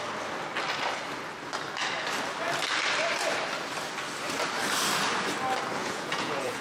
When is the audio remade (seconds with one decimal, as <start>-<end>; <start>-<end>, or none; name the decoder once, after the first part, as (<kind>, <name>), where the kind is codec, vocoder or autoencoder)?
5.8-6.6 (vocoder, Vocos)